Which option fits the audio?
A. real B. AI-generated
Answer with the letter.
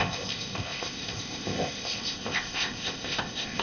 B